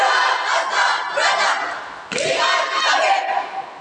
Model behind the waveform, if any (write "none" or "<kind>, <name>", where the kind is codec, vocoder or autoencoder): none